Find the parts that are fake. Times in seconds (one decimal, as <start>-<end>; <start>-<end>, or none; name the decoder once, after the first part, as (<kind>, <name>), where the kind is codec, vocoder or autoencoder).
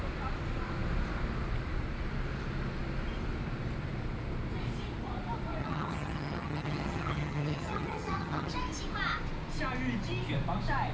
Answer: 5.6-8.5 (vocoder, HiFi-GAN)